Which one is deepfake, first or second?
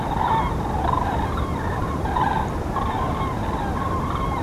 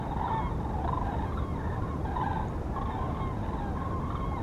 first